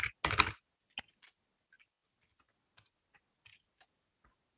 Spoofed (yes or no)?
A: no